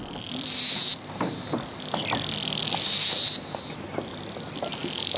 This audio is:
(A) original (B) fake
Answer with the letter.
A